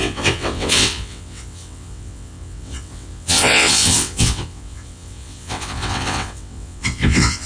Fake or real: fake